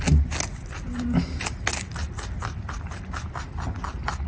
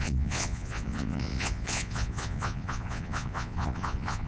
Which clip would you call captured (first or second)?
first